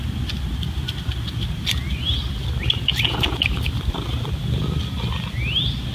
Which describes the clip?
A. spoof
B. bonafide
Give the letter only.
B